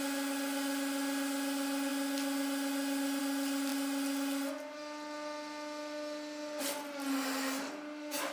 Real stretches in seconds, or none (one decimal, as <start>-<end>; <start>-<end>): 0.0-8.3